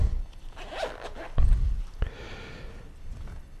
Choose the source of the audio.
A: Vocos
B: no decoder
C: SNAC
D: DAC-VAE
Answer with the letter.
B